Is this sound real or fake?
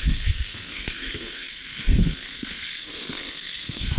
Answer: fake